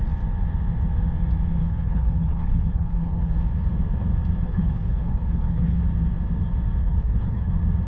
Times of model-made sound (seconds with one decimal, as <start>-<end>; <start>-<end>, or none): 1.6-3.3; 4.5-5.8; 6.8-7.5